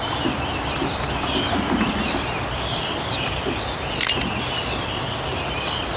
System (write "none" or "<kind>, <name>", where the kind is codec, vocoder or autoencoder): none